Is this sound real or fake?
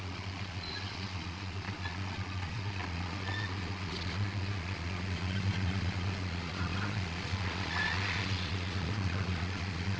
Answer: fake